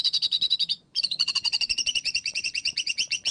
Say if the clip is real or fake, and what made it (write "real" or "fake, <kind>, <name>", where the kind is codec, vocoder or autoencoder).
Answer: fake, vocoder, Vocos